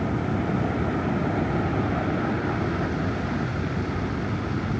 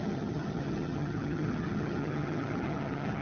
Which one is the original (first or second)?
first